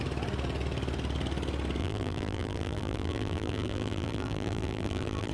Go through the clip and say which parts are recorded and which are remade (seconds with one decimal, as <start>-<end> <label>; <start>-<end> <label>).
0.0-1.8 recorded; 1.8-5.3 remade